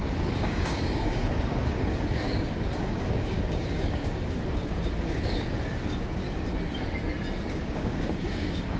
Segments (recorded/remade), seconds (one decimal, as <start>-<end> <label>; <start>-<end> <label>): 0.0-6.2 remade; 6.2-7.5 recorded; 7.5-8.8 remade

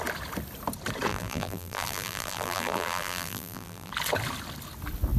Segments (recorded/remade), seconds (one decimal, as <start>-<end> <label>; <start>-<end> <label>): 0.0-1.1 recorded; 1.1-3.9 remade; 3.9-5.2 recorded

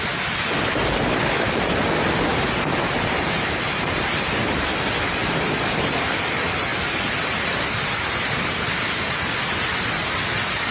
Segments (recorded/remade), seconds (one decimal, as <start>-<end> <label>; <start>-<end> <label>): 0.0-2.3 recorded; 2.3-4.0 remade; 4.0-5.2 recorded; 5.2-6.0 remade; 6.0-10.7 recorded

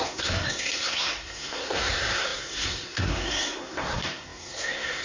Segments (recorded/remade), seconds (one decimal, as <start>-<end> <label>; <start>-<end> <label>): 0.0-5.0 remade

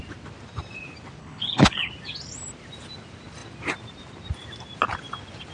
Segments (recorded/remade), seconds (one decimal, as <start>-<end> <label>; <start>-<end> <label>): 0.0-1.2 recorded; 1.2-1.9 remade; 1.9-5.5 recorded

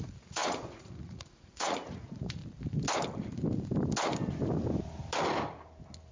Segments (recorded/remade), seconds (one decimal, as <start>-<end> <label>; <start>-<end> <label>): 0.0-2.4 remade; 2.4-6.1 recorded